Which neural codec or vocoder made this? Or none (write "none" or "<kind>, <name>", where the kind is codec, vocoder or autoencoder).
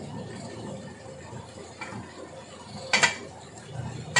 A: none